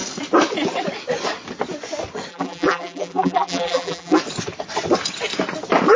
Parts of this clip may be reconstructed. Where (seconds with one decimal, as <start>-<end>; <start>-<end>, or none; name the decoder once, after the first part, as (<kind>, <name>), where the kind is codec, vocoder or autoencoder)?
2.3-4.2 (vocoder, BigVGAN v2)

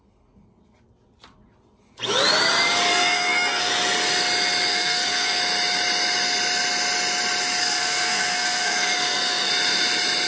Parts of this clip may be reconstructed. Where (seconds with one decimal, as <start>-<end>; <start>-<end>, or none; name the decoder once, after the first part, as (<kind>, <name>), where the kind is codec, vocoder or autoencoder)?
2.9-3.7 (codec, SNAC); 4.7-5.4; 7.6-9.5

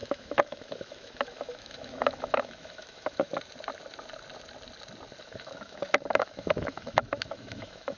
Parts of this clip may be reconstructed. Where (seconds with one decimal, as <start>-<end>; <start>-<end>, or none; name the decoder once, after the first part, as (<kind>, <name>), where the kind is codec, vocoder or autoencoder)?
0.0-3.3 (autoencoder, DAC-VAE); 5.2-8.0

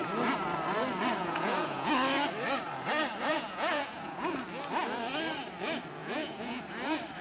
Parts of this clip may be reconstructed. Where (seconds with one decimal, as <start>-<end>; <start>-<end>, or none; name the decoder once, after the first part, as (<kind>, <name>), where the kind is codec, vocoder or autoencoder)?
1.2-1.9 (vocoder, Vocos); 3.3-4.4; 6.0-6.6

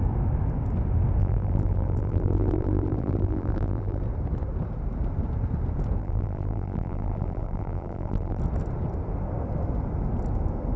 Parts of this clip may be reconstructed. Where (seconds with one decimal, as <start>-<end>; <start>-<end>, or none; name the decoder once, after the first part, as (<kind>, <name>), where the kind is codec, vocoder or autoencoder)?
1.2-4.0 (vocoder, BigVGAN v2); 6.0-8.4